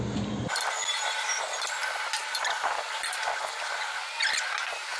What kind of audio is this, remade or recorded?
recorded